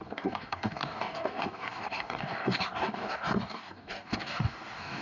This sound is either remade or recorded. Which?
remade